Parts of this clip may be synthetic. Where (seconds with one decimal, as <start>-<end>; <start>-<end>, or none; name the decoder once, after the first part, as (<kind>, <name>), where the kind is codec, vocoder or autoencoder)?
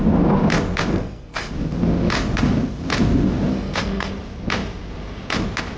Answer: 0.9-1.5 (codec, SNAC); 3.5-4.1